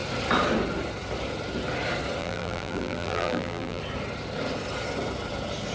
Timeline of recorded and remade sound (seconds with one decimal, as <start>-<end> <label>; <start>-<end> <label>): 0.0-2.2 recorded; 2.2-3.8 remade; 3.8-5.7 recorded